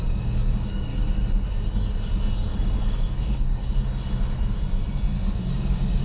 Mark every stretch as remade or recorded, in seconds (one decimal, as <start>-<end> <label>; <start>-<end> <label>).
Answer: 0.0-0.9 remade; 0.9-2.9 recorded; 2.9-3.6 remade; 3.6-5.6 recorded; 5.6-6.0 remade